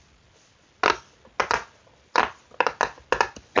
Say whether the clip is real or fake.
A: real